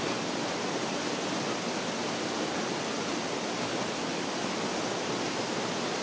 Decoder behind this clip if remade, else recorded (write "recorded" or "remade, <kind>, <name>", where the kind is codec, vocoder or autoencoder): recorded